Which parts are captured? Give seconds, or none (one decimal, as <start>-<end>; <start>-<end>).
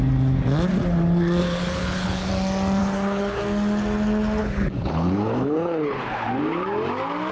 0.0-1.4; 2.3-2.8; 3.4-4.4; 6.3-7.3